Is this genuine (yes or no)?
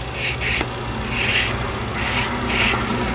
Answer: yes